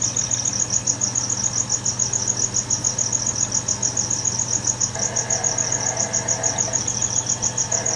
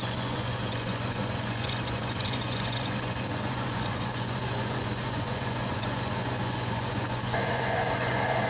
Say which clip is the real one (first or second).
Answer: first